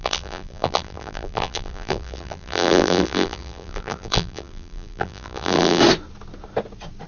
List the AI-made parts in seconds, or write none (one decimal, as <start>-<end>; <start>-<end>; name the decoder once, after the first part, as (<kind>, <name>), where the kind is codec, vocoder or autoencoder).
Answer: 0.0-5.8 (vocoder, BigVGAN v2)